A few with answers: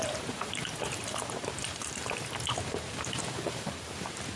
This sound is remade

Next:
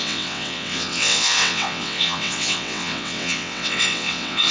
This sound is remade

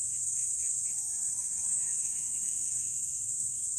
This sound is remade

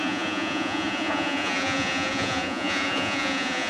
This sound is remade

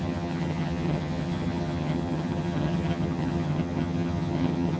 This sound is remade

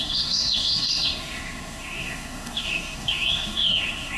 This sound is remade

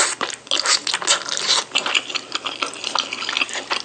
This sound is recorded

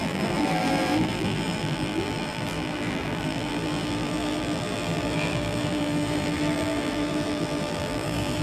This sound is remade